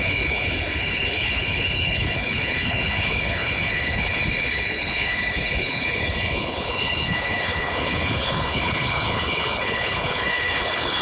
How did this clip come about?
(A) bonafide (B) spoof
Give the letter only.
B